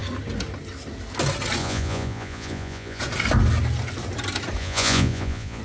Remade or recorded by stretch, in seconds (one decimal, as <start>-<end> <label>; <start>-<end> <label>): 0.0-1.6 recorded; 1.6-3.0 remade; 3.0-4.6 recorded; 4.6-5.6 remade

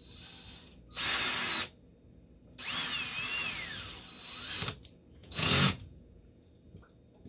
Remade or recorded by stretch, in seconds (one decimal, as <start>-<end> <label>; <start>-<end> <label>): 0.0-5.2 recorded; 5.2-6.5 remade; 6.5-7.3 recorded

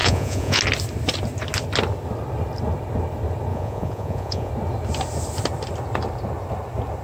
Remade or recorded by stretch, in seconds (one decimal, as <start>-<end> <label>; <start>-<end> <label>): 0.0-0.6 remade; 0.6-3.5 recorded; 3.5-4.5 remade; 4.5-7.0 recorded

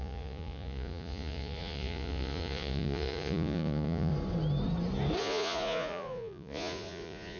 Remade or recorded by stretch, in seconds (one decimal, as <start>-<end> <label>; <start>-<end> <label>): 0.0-4.1 remade; 4.1-5.2 recorded; 5.2-7.4 remade

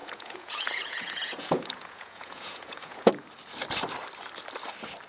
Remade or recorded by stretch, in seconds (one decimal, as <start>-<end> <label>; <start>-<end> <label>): 0.0-3.1 remade; 3.1-5.1 recorded

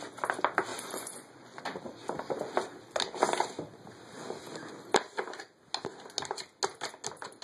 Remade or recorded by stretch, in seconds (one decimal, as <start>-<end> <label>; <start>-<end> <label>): 0.0-0.7 recorded; 0.7-1.6 remade; 1.6-7.4 recorded

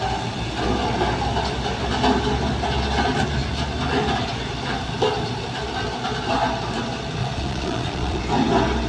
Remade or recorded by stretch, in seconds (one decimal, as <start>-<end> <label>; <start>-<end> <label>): 0.0-7.2 recorded; 7.2-8.2 remade; 8.2-8.9 recorded

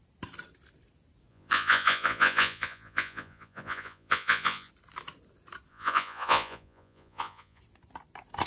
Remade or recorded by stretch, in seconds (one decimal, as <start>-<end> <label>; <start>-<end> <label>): 0.0-1.3 recorded; 1.3-4.7 remade; 4.7-5.7 recorded; 5.7-7.6 remade; 7.6-8.5 recorded